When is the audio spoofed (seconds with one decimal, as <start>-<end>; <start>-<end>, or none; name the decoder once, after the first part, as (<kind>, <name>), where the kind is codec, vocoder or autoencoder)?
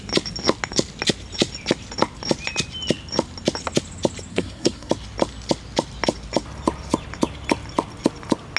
4.3-4.9 (codec, SNAC)